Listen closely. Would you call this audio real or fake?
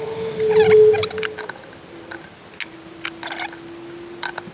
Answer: real